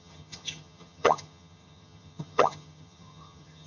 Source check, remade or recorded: remade